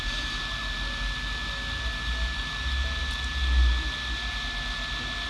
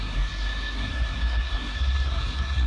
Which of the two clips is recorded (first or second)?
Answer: first